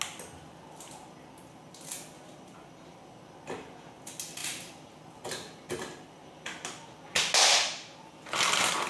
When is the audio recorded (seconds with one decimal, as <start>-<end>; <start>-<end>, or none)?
0.0-8.9